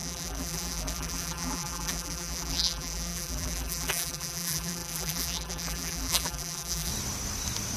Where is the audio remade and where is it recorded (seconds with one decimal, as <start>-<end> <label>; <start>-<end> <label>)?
0.0-6.9 remade; 6.9-7.8 recorded